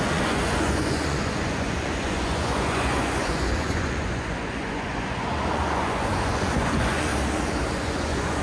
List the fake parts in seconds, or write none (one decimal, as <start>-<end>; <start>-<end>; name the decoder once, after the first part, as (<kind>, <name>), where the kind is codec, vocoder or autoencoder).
0.0-7.1 (vocoder, Vocos); 7.7-8.4